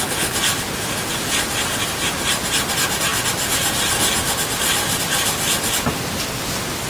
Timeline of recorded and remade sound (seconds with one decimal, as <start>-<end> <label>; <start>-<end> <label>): 0.0-6.9 recorded